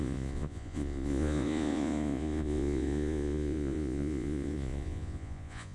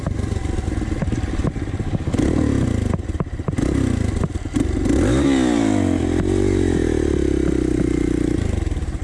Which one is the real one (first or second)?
second